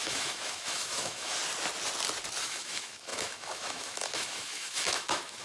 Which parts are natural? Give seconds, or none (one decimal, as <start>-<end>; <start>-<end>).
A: 1.4-2.4